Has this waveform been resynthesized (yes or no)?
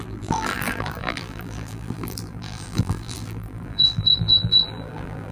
yes